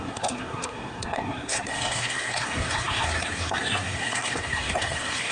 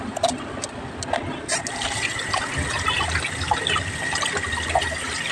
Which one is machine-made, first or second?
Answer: first